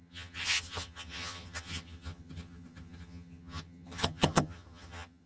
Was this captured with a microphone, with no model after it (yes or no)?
no